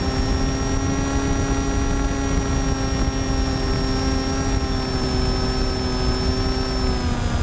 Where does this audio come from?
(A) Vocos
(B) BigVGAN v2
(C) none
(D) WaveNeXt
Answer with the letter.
C